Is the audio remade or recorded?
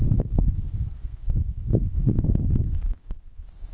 remade